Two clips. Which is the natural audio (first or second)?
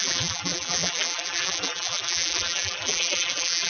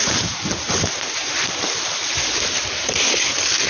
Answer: second